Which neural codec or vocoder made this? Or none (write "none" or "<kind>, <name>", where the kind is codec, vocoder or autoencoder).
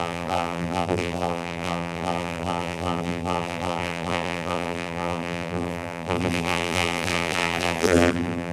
vocoder, BigVGAN v2